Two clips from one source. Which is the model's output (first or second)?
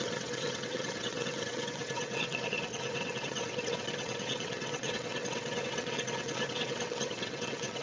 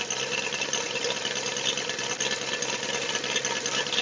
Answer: first